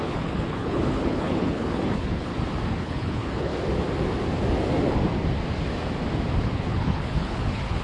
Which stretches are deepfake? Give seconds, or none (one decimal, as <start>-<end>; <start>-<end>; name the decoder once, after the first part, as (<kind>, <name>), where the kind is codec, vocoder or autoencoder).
0.0-2.3 (codec, HILCodec); 2.8-3.5; 6.4-7.8